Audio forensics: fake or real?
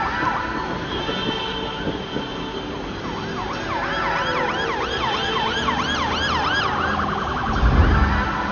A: real